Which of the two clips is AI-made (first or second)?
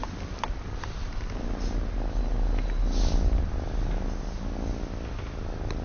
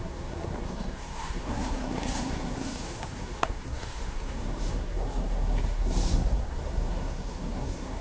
second